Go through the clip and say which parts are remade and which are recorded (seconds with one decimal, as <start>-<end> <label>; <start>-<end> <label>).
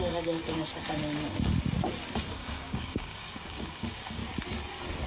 0.0-0.4 remade; 0.4-2.3 recorded; 2.3-4.2 remade; 4.2-5.1 recorded